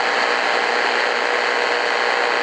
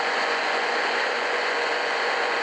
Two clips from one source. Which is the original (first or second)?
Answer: first